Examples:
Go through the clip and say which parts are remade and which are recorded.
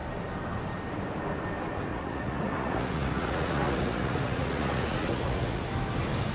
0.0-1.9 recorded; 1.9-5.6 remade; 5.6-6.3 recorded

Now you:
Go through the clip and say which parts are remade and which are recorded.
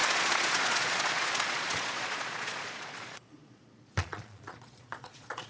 0.0-5.5 remade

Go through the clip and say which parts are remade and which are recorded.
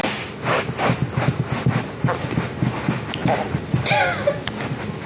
0.0-5.1 recorded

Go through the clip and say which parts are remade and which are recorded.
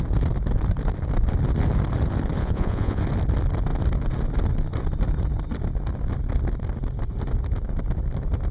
0.0-2.4 recorded; 2.4-3.0 remade; 3.0-8.5 recorded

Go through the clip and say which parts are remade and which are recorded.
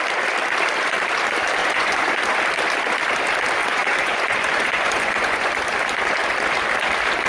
0.0-1.6 recorded; 1.6-2.2 remade; 2.2-3.6 recorded; 3.6-5.5 remade; 5.5-7.3 recorded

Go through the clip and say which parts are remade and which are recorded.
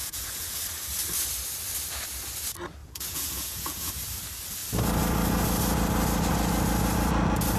0.0-0.6 remade; 0.6-2.8 recorded; 2.8-3.9 remade; 3.9-7.6 recorded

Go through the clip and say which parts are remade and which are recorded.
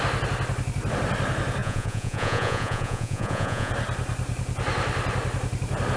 0.0-1.6 recorded; 1.6-3.7 remade; 3.7-6.0 recorded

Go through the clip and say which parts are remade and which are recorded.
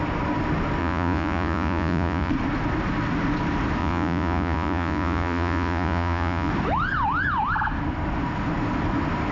0.0-0.8 recorded; 0.8-2.3 remade; 2.3-3.8 recorded; 3.8-6.5 remade; 6.5-9.3 recorded